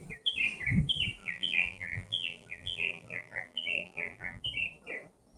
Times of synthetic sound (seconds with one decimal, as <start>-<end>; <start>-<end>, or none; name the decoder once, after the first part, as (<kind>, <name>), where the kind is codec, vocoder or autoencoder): 1.2-4.4 (vocoder, BigVGAN v2)